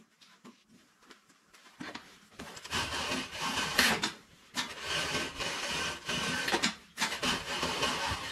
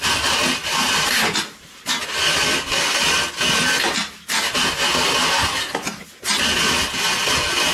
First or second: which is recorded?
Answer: second